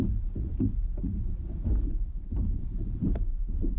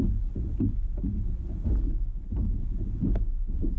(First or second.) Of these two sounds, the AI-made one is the first